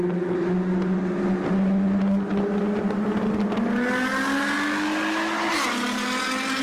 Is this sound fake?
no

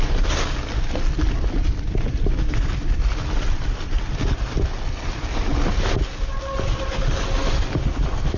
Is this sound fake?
no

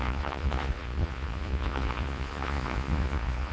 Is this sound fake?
yes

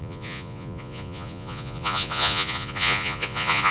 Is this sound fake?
yes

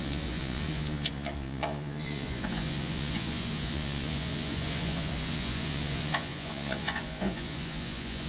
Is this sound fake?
yes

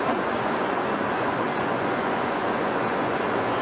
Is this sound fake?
yes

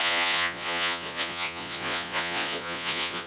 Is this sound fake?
yes